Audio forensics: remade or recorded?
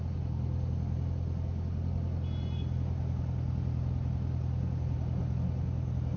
recorded